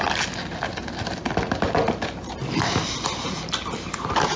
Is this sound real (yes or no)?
yes